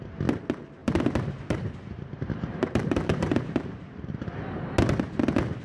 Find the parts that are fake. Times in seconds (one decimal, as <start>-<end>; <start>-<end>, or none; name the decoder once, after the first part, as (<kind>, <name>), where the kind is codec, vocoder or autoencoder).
0.8-4.2 (vocoder, BigVGAN v2)